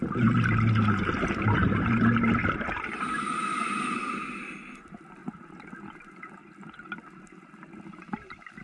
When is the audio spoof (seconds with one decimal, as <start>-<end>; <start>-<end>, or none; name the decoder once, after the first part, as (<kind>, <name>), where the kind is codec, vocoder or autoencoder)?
none